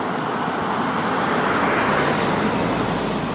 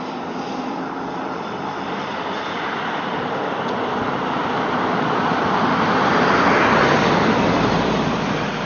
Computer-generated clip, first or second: second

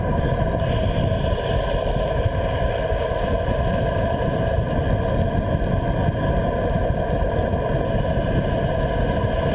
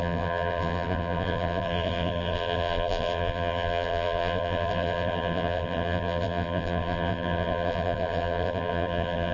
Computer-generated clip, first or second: second